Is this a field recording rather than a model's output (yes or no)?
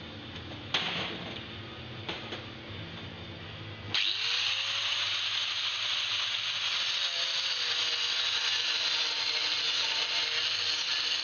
yes